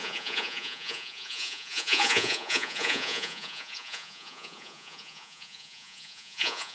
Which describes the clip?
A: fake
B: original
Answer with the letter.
A